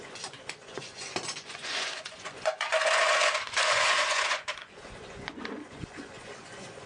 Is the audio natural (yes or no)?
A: no